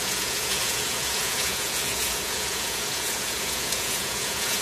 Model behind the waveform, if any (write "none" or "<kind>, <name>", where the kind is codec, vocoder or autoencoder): vocoder, Vocos